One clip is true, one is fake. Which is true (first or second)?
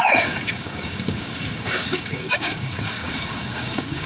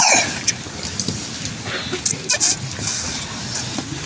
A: second